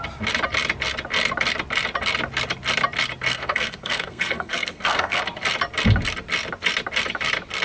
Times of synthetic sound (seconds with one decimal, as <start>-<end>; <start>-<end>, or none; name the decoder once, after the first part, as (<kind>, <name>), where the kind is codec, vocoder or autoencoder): 3.3-5.2 (codec, SNAC)